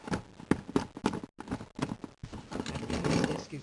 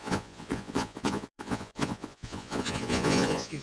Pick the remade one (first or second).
second